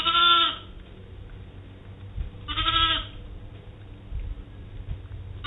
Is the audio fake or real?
real